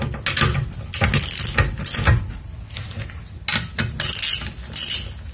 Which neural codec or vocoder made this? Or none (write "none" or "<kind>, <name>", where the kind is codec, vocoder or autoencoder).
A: none